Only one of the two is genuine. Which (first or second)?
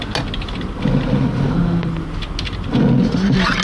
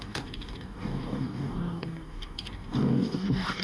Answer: first